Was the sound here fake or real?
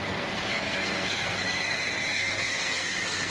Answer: fake